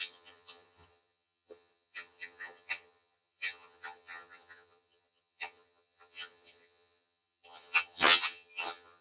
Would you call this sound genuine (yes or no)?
no